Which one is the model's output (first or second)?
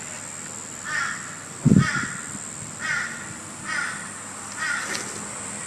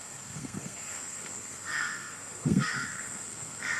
second